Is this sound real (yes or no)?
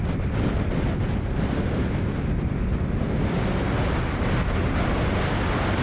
yes